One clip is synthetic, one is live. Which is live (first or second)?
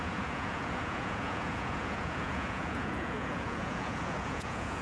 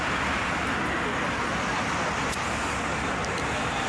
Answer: second